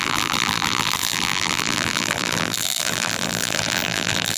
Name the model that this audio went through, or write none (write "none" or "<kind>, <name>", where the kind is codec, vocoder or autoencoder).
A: vocoder, BigVGAN v2